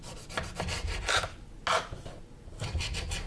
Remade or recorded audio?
recorded